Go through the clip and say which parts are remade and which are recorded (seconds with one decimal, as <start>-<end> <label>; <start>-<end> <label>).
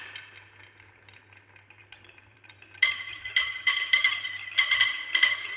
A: 0.0-1.8 recorded; 1.8-4.3 remade; 4.3-5.6 recorded